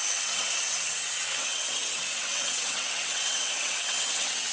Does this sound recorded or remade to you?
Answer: remade